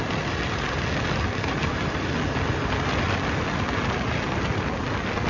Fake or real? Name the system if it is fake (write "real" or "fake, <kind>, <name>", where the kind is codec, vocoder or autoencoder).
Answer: real